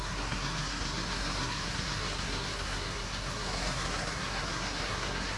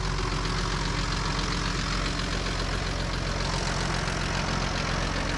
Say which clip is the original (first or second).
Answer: second